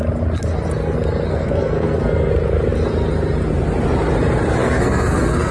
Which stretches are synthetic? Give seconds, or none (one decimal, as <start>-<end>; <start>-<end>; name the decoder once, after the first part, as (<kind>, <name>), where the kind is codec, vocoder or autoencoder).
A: 1.3-2.3 (codec, SNAC); 4.6-5.5